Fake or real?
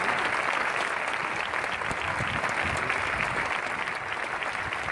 real